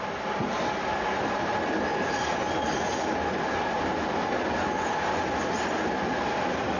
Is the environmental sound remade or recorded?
recorded